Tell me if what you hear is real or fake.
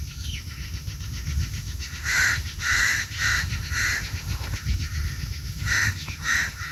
fake